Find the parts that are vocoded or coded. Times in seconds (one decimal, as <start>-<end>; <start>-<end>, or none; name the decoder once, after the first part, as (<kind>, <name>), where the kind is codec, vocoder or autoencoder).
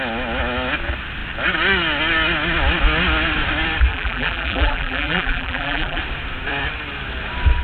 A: 3.9-6.0 (vocoder, BigVGAN v2)